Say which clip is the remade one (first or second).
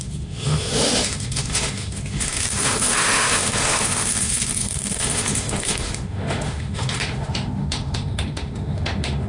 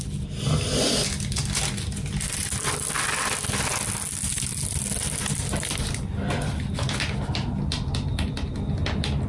first